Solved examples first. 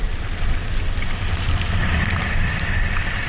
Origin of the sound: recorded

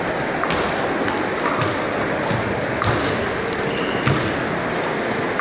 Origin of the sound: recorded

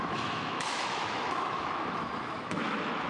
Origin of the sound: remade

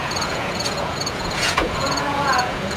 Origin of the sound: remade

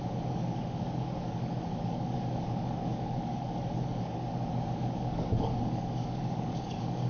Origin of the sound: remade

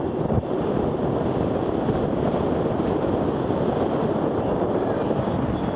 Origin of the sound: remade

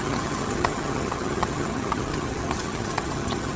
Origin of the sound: remade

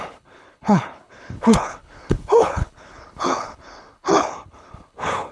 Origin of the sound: remade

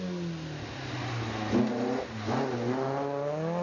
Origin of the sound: recorded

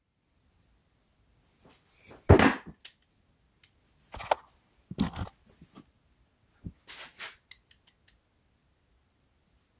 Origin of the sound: recorded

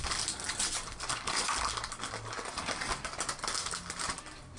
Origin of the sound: recorded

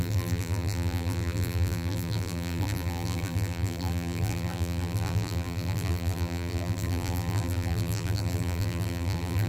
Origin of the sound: remade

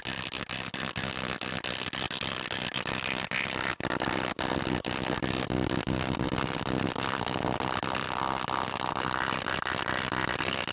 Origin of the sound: recorded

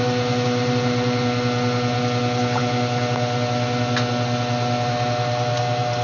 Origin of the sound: recorded